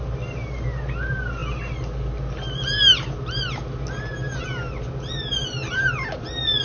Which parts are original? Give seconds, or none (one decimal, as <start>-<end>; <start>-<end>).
0.0-6.6